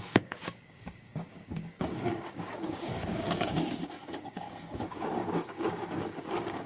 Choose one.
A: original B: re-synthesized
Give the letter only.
B